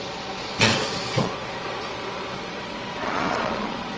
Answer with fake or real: fake